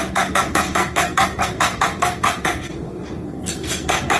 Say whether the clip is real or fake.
fake